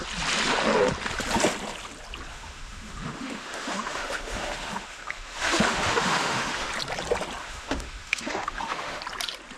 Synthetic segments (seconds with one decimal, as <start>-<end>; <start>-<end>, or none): 2.3-6.7; 7.4-9.0